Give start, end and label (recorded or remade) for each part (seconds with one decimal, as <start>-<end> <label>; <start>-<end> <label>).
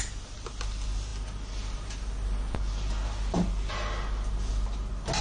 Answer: 0.0-5.2 recorded